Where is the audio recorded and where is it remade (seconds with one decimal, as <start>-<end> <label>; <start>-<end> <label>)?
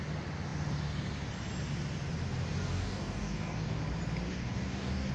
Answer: 0.0-2.7 recorded; 2.7-3.8 remade; 3.8-4.3 recorded; 4.3-5.1 remade